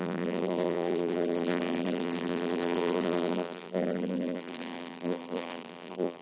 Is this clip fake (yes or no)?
yes